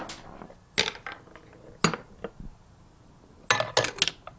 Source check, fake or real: real